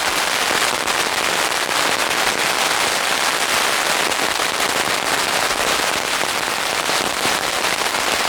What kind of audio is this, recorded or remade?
recorded